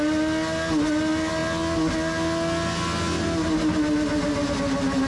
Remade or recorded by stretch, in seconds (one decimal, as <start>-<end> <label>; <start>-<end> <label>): 0.0-5.1 recorded